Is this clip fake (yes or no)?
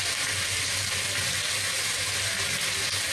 no